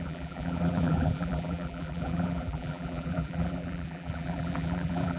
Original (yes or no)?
no